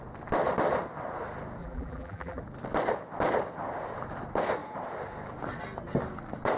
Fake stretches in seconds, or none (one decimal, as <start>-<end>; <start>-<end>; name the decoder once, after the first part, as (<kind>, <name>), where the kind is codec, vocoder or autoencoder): 1.6-2.4 (vocoder, BigVGAN v2)